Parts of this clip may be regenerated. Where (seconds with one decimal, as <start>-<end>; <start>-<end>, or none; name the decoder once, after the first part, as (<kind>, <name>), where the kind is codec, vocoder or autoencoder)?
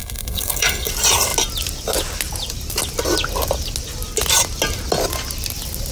0.0-0.9 (codec, SNAC)